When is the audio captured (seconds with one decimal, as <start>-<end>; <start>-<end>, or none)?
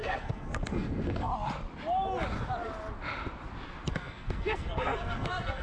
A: 1.3-3.9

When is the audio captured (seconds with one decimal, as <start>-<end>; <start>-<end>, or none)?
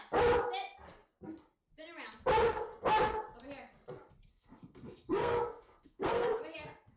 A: 0.0-4.3; 6.4-7.0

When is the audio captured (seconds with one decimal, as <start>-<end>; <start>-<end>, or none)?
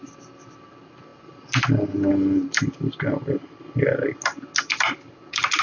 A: 0.0-5.6